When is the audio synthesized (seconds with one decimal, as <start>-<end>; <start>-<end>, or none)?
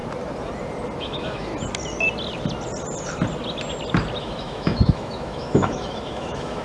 1.0-1.5; 4.2-6.6